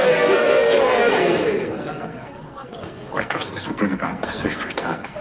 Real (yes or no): no